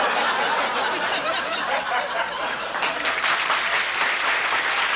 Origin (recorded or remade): recorded